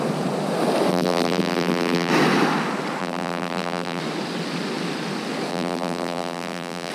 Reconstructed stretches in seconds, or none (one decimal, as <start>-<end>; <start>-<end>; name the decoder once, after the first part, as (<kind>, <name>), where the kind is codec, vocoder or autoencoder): 0.9-2.1 (vocoder, BigVGAN v2); 3.0-4.0; 5.5-6.9